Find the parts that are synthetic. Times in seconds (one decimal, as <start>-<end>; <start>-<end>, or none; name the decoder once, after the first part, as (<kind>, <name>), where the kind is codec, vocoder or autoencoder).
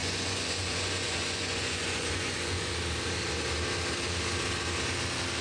0.0-2.7 (vocoder, Vocos)